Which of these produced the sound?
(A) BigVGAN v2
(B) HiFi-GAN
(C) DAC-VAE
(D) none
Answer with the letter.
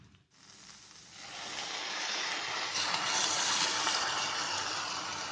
D